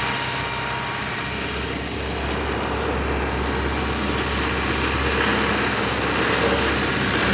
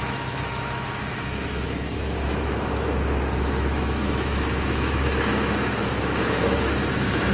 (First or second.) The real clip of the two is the first